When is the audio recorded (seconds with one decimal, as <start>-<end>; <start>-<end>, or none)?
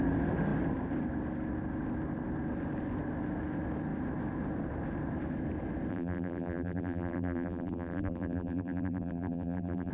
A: 0.0-5.9